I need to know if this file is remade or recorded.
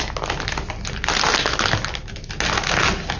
recorded